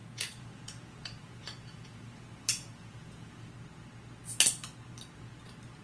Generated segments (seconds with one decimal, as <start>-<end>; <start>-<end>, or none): 0.0-3.5